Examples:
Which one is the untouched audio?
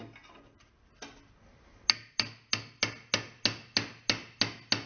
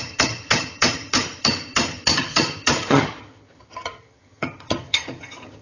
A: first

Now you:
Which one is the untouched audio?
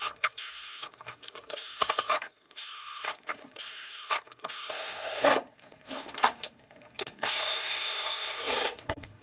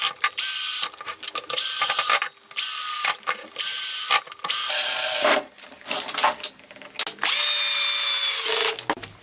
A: second